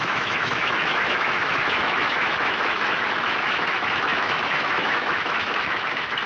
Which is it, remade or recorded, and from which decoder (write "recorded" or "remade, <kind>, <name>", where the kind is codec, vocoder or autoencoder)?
remade, autoencoder, DAC-VAE